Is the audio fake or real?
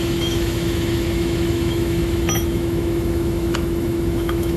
fake